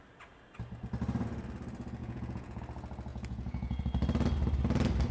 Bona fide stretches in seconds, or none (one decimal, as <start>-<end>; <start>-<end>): 0.0-2.0; 2.6-3.1; 3.8-5.1